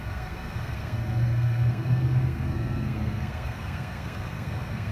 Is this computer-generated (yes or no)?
yes